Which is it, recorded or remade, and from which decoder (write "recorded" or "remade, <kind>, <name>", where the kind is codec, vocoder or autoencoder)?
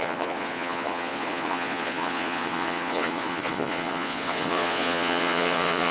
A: remade, vocoder, Vocos